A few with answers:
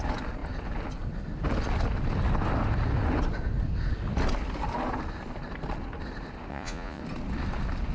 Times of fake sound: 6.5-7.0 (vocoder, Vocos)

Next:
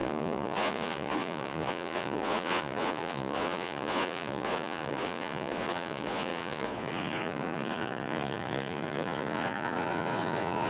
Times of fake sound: 0.0-10.7 (vocoder, Vocos)

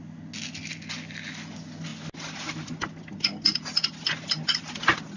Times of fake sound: none

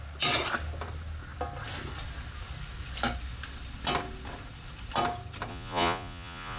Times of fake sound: 5.5-6.6 (vocoder, Vocos)

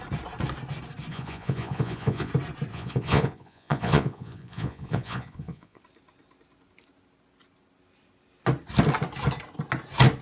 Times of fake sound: 1.1-2.3 (vocoder, Vocos); 2.7-5.8

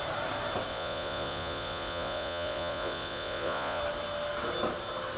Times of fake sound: 0.7-3.8 (vocoder, Vocos)